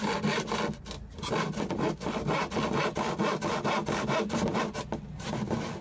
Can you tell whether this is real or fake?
real